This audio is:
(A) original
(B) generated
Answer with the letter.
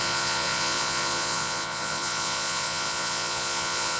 B